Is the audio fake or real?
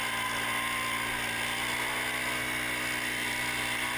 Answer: real